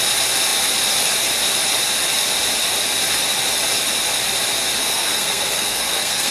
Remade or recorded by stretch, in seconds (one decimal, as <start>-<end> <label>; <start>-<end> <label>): 0.0-4.8 recorded; 4.8-6.3 remade

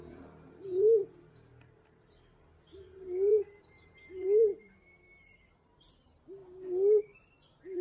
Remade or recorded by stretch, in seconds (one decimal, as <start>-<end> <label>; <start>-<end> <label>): 0.0-6.4 remade; 6.4-7.0 recorded; 7.0-7.8 remade